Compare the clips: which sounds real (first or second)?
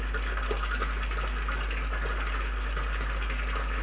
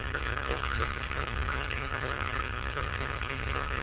first